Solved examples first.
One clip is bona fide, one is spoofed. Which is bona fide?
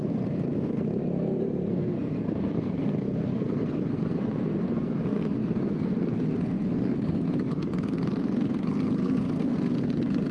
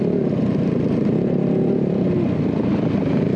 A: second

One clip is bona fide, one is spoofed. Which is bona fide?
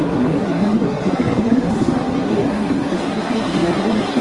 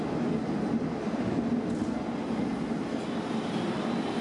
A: second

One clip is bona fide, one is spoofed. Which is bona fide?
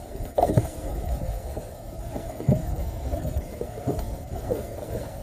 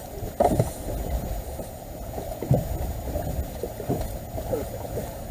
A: second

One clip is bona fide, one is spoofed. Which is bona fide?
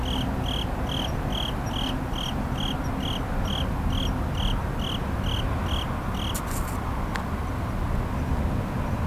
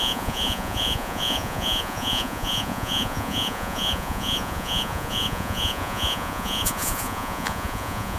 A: first